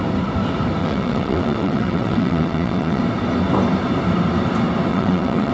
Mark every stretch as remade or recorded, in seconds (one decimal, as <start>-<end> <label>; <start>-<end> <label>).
0.0-0.8 recorded; 0.8-3.0 remade; 3.0-4.9 recorded; 4.9-5.5 remade